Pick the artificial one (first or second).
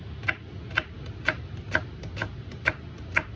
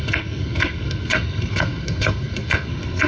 second